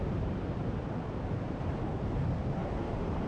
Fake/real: fake